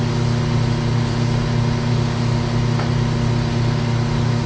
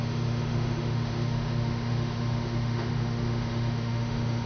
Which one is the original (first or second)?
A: first